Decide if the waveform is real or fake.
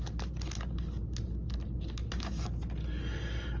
real